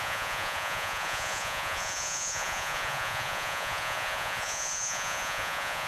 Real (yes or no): no